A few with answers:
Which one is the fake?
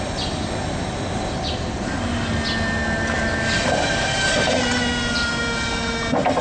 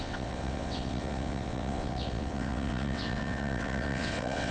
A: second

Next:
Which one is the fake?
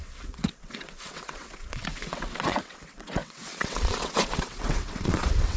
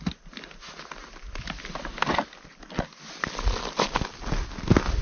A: first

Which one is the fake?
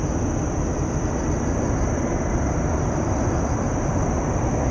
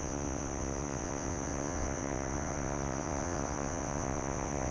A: second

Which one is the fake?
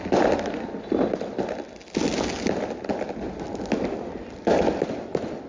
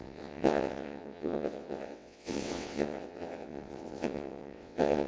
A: second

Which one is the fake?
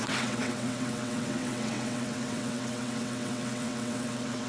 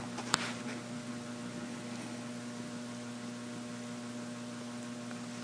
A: first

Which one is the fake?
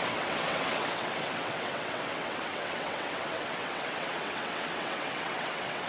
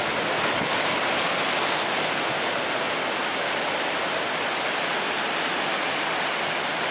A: first